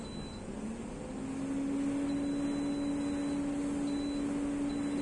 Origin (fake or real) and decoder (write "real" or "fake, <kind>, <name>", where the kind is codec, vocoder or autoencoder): real